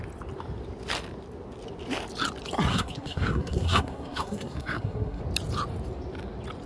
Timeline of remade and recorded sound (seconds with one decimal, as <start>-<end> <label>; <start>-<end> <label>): 0.0-2.7 recorded; 2.7-5.2 remade; 5.2-6.7 recorded